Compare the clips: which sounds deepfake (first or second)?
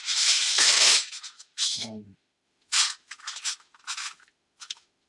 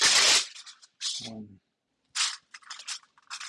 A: first